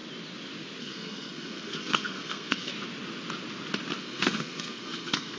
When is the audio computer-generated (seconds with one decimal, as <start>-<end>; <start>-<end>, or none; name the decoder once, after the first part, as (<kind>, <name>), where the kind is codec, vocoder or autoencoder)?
0.8-2.7 (codec, SNAC); 4.0-5.4